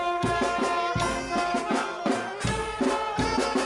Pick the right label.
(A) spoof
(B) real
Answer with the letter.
B